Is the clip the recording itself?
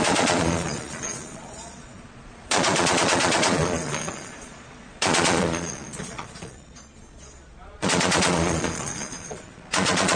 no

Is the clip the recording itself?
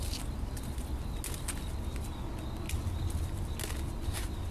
yes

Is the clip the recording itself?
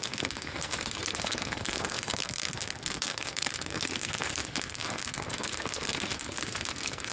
no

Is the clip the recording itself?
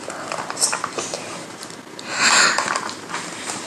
yes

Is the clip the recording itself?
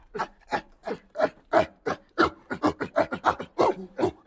no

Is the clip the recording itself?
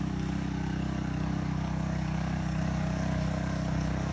no